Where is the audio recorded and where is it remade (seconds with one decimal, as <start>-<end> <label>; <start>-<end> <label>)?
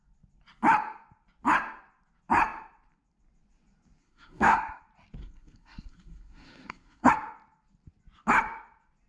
0.0-4.0 recorded; 4.0-4.8 remade; 4.8-5.2 recorded; 5.2-7.1 remade; 7.1-9.1 recorded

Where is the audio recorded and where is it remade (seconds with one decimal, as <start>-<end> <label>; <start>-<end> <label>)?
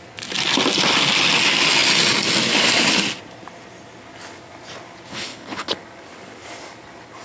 0.0-5.1 recorded; 5.1-5.7 remade; 5.7-7.2 recorded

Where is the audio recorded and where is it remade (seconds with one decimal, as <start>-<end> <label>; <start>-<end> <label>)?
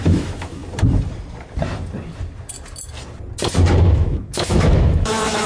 0.0-0.6 remade; 0.6-3.9 recorded; 3.9-5.5 remade